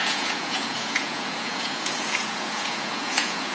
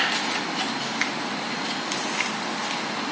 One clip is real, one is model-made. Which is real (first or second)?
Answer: second